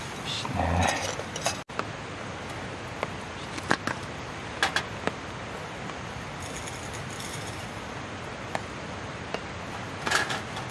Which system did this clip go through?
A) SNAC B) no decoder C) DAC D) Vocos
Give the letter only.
B